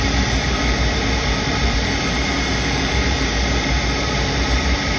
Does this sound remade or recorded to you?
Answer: remade